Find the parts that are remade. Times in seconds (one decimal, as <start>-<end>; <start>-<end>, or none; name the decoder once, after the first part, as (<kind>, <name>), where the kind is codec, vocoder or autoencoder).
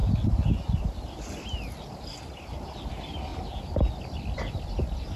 none